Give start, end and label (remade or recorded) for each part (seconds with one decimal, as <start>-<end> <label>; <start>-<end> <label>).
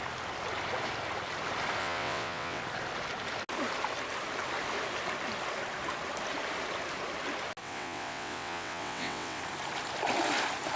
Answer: 0.0-1.8 recorded; 1.8-2.6 remade; 2.6-7.6 recorded; 7.6-9.4 remade; 9.4-10.8 recorded